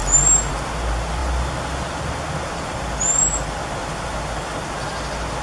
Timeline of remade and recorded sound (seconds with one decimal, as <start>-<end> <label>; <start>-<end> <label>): 0.0-5.4 recorded